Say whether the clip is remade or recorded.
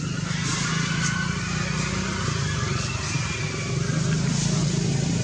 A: recorded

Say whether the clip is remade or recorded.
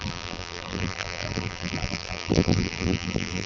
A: remade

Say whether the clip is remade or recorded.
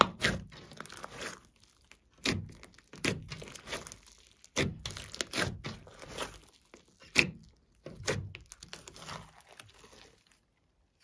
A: recorded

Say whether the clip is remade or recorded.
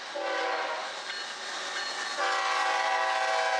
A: recorded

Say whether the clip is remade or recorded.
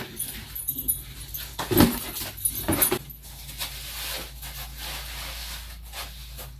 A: recorded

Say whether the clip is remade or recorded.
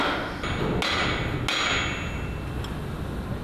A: recorded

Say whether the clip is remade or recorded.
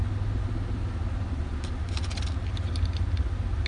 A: recorded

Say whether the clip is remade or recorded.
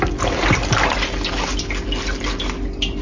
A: recorded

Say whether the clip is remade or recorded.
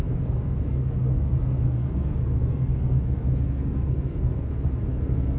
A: remade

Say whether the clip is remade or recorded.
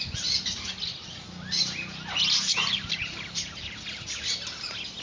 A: recorded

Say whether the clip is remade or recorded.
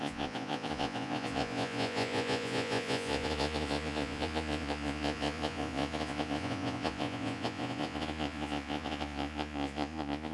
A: remade